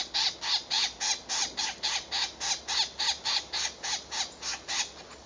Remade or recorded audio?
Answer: recorded